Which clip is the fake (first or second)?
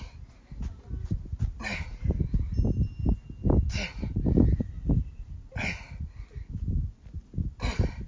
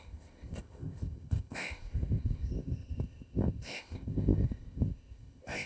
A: second